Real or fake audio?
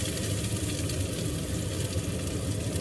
fake